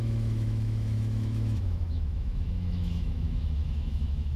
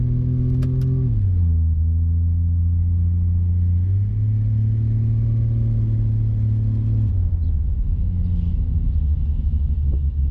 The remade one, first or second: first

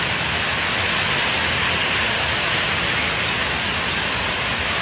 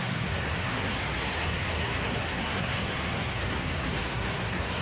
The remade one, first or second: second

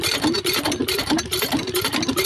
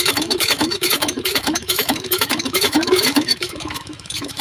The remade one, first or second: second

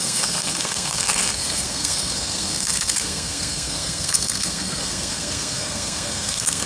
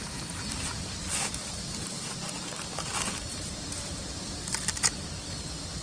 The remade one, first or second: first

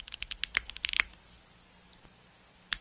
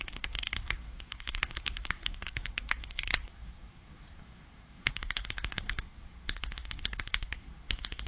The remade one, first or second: second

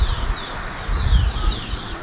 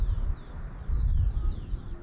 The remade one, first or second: first